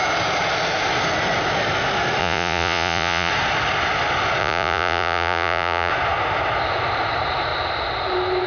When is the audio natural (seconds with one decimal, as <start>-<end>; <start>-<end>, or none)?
0.0-2.2; 3.3-4.4; 5.9-8.5

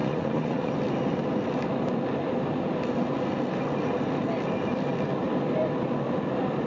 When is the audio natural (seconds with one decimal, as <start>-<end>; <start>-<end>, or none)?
0.7-6.7

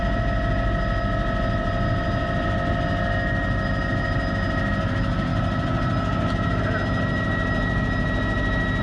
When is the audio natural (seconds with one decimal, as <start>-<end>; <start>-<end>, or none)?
0.0-8.8

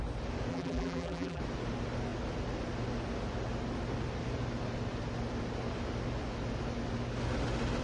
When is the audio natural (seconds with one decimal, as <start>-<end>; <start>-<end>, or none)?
0.0-0.5; 1.4-7.8

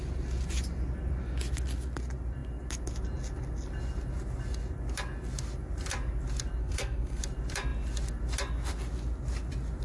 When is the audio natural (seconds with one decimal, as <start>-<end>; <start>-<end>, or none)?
0.0-6.6; 7.2-9.8